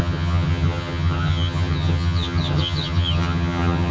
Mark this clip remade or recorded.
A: remade